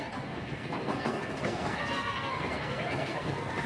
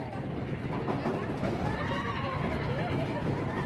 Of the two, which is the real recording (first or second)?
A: second